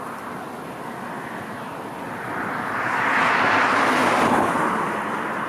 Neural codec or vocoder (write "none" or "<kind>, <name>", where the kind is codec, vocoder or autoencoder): none